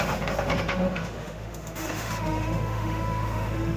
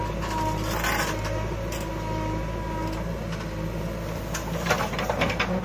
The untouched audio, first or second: second